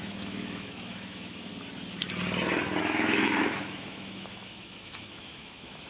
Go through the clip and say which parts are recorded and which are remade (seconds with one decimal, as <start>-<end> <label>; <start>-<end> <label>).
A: 0.0-1.5 remade; 1.5-2.8 recorded; 2.8-5.9 remade